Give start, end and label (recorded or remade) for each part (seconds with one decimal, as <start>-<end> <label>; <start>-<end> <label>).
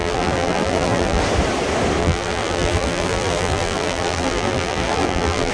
0.0-1.2 remade; 1.2-2.0 recorded; 2.0-5.5 remade